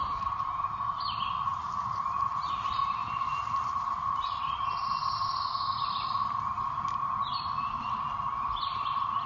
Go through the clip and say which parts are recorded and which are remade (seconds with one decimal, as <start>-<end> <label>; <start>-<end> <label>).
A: 0.0-9.3 recorded